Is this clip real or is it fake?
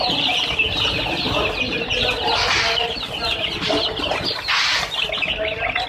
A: real